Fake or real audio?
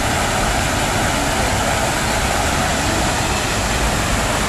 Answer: real